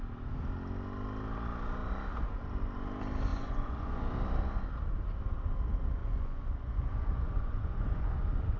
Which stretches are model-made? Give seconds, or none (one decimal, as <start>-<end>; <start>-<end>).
3.3-4.0; 6.0-8.6